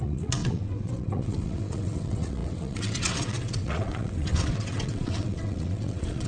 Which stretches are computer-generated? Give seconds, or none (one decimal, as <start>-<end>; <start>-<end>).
0.0-6.3